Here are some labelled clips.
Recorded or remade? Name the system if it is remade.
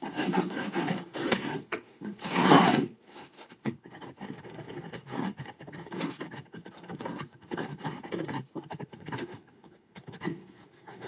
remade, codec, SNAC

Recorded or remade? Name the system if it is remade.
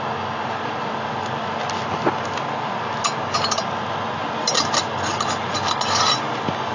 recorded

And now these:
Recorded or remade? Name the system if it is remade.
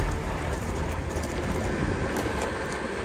recorded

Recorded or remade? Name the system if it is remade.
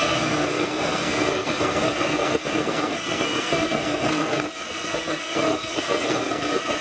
remade, codec, SNAC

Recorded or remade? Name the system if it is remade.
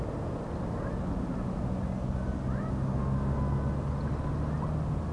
recorded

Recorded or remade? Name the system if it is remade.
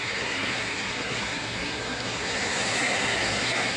remade, codec, SNAC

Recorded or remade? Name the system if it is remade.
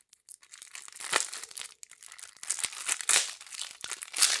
recorded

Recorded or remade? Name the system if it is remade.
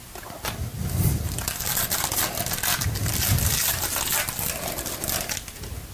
recorded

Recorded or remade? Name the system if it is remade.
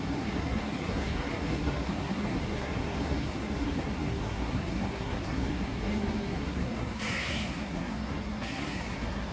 remade, codec, SNAC